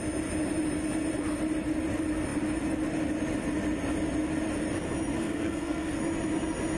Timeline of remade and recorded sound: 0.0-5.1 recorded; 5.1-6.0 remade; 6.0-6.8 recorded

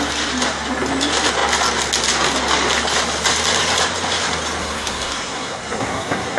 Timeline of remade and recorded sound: 0.0-4.6 recorded; 4.6-6.4 remade

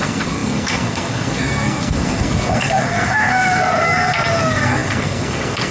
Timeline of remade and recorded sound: 0.0-5.7 remade

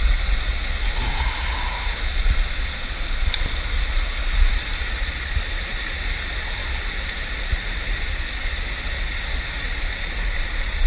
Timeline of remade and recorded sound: 0.0-10.9 recorded

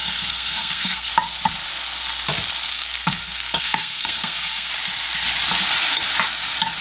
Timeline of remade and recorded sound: 0.0-1.1 remade; 1.1-2.7 recorded; 2.7-4.7 remade; 4.7-6.8 recorded